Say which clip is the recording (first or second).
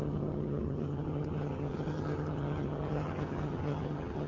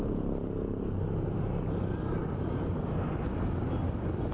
second